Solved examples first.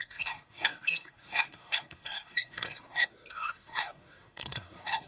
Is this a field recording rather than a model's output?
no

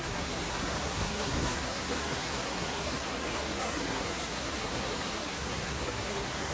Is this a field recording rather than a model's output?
no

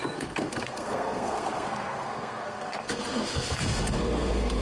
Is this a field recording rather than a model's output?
no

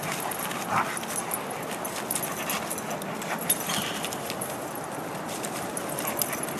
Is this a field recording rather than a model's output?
yes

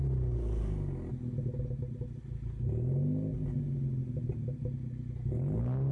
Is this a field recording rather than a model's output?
yes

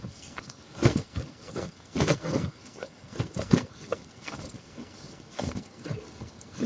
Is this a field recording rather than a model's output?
no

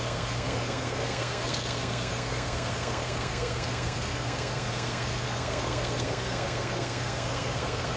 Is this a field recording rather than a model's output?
no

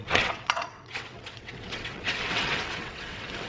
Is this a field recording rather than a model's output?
no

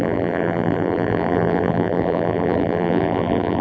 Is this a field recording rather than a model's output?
no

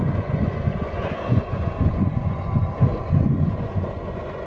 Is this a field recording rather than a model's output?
no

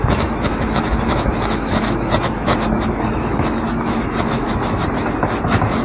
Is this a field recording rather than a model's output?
no